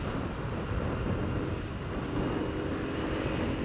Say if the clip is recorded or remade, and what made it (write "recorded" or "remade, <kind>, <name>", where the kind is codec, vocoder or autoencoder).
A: recorded